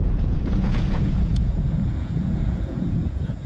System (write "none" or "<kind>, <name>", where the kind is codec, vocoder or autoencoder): vocoder, Vocos